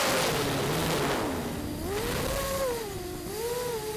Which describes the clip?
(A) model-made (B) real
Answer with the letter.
B